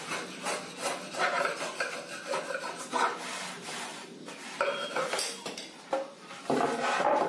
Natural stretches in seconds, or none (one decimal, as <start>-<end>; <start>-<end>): 0.0-3.9; 6.4-7.3